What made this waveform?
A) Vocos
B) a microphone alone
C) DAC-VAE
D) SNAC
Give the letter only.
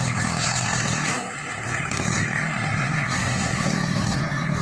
D